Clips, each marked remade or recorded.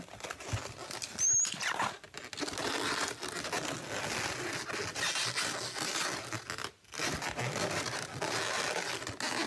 recorded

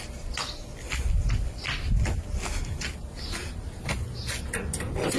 recorded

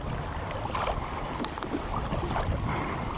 remade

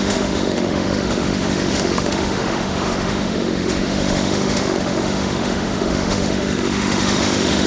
remade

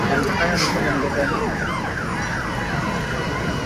recorded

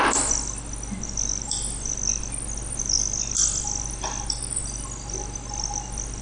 recorded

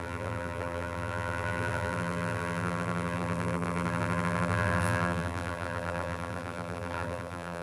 remade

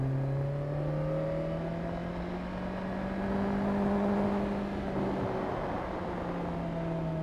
recorded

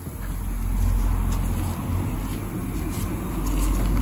recorded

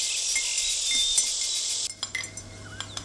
recorded